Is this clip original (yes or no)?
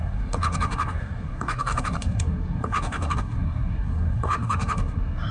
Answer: no